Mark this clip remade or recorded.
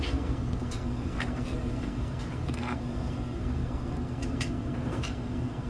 remade